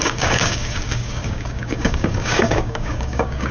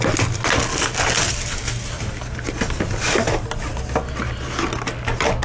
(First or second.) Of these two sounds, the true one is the second